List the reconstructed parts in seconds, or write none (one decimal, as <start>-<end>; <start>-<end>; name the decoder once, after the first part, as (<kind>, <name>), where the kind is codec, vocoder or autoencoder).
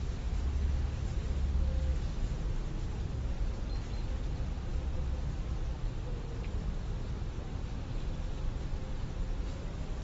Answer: none